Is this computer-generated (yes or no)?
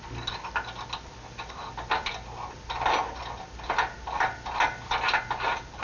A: no